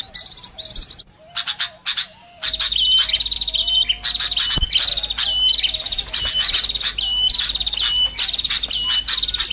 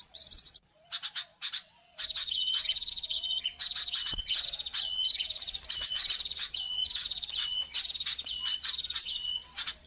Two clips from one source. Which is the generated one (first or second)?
second